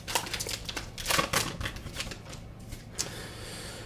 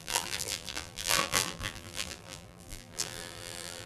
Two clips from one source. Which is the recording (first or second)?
first